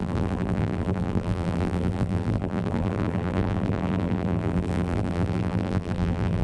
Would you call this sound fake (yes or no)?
yes